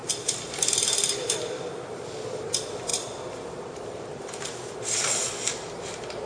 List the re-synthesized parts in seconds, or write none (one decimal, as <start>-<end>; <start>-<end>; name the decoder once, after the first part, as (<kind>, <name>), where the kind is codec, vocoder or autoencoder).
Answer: none